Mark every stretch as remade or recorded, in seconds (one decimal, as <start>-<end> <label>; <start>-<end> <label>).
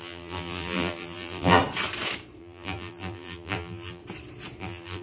0.0-1.6 remade; 1.6-2.4 recorded; 2.4-4.0 remade; 4.0-4.6 recorded; 4.6-5.0 remade